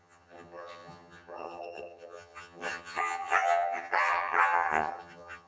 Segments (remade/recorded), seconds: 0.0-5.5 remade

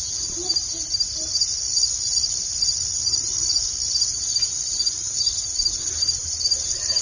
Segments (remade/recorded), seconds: 0.0-7.0 recorded

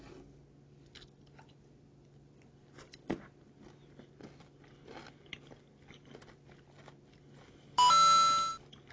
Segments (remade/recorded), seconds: 0.0-8.9 recorded

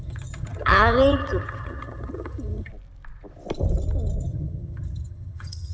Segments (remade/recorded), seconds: 0.0-2.7 remade; 2.7-4.2 recorded; 4.2-5.7 remade

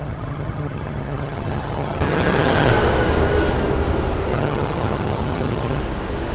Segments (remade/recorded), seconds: 0.0-2.7 remade; 2.7-4.3 recorded; 4.3-5.8 remade; 5.8-6.3 recorded

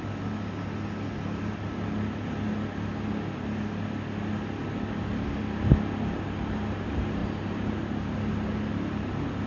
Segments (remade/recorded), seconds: 0.0-9.5 recorded